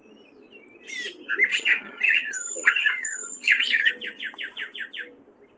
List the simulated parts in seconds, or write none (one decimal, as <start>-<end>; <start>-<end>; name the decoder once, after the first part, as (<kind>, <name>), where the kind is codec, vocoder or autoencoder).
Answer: 1.5-3.9 (vocoder, HiFi-GAN)